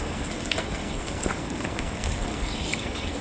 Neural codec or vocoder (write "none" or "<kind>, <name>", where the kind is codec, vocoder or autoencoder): codec, SNAC